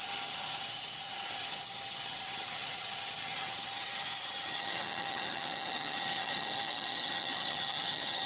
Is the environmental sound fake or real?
fake